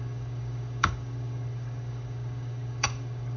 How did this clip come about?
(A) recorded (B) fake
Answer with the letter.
B